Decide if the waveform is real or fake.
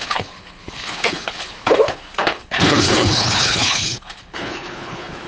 fake